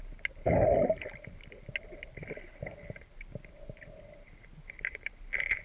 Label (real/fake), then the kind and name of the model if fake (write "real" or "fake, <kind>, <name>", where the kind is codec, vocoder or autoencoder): real